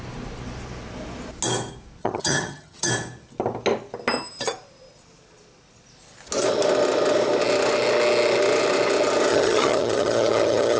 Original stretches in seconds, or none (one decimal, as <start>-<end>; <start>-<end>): 0.0-2.0; 2.9-9.3